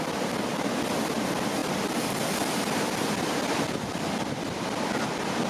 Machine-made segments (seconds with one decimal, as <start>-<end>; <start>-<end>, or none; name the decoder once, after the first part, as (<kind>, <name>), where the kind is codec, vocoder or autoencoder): 1.6-4.9 (vocoder, BigVGAN v2)